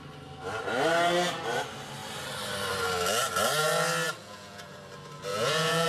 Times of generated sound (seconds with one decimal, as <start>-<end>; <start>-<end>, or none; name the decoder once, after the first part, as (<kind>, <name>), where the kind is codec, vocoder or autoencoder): 4.2-4.8 (vocoder, Vocos); 5.3-5.9